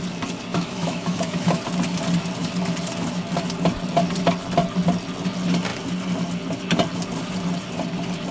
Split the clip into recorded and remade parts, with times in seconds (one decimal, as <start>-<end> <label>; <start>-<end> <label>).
0.0-0.5 recorded; 0.5-1.6 remade; 1.6-8.3 recorded